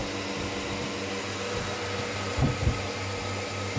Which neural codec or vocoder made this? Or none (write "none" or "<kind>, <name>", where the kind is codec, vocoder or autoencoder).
none